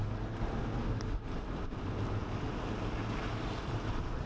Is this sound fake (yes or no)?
no